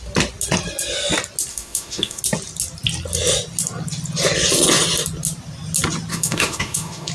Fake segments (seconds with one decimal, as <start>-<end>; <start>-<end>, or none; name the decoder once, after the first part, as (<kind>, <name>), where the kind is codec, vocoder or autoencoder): 1.5-2.2 (autoencoder, DAC-VAE); 6.1-7.1